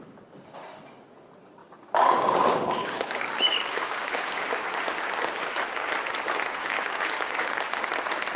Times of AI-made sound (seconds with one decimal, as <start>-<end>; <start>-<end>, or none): 1.6-5.9; 6.6-7.8